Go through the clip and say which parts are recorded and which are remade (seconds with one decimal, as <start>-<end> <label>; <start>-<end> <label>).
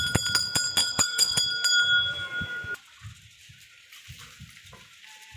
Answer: 0.0-0.8 recorded; 0.8-1.4 remade; 1.4-5.4 recorded